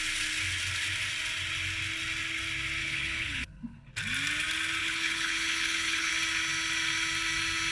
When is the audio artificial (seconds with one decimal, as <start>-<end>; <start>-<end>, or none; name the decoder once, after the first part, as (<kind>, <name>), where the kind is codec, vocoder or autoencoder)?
2.8-3.9 (codec, HILCodec); 4.8-6.1